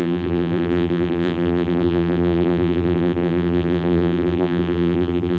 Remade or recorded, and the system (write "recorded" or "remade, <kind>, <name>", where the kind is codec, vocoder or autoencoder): remade, vocoder, BigVGAN v2